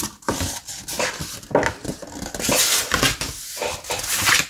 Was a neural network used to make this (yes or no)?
no